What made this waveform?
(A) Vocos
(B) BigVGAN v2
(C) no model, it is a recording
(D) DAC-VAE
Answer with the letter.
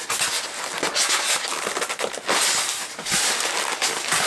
C